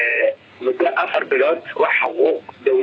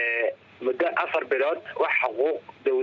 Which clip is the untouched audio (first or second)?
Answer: second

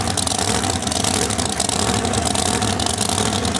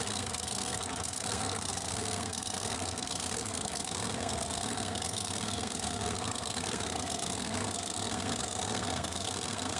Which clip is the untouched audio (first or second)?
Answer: first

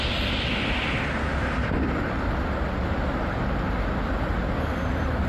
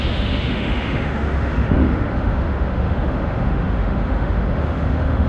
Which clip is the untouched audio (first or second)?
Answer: first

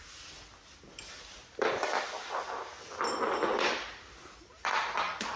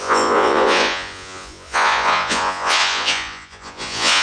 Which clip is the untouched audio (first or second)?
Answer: first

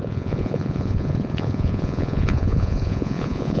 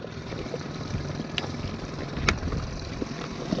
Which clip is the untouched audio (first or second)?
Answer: second